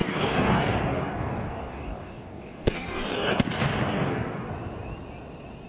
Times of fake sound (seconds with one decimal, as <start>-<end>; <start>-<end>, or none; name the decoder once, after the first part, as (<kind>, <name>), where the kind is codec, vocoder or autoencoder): 0.0-3.4 (codec, DAC); 3.9-4.5